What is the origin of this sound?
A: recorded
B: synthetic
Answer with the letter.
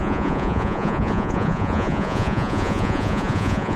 B